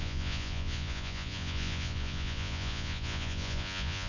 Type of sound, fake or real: fake